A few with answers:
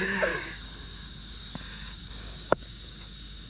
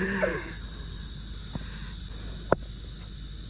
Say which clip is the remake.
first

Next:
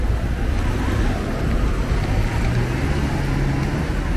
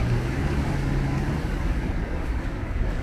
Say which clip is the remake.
second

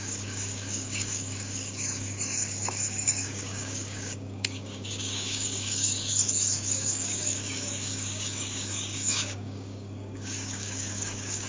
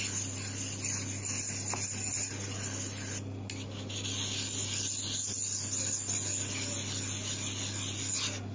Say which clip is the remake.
first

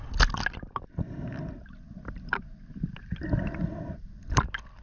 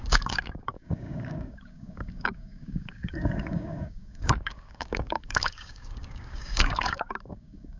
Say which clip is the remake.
second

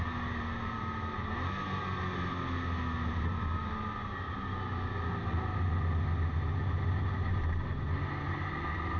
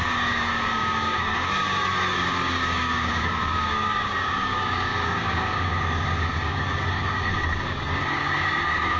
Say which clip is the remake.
second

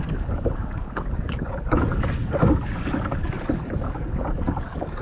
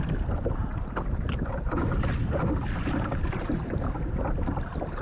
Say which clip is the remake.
first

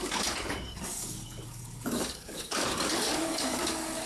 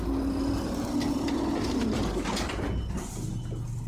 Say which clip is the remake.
first